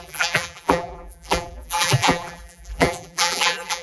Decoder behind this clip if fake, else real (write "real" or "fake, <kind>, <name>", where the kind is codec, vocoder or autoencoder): fake, vocoder, BigVGAN v2